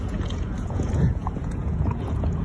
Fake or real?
fake